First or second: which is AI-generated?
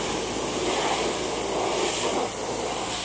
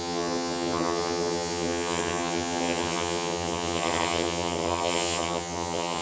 second